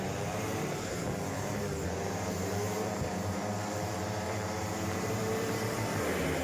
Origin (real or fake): fake